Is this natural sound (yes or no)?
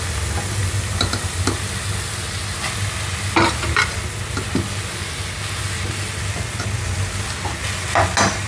yes